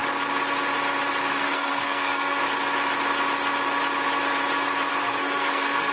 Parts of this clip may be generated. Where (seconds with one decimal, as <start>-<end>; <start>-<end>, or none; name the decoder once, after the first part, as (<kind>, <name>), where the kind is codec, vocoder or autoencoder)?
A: 1.3-2.4 (codec, SNAC); 4.9-5.9

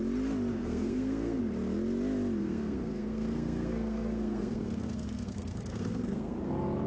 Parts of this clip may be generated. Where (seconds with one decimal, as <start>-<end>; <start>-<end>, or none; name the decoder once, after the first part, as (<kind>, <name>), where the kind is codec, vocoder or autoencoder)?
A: 0.5-1.4 (codec, SNAC); 2.4-6.5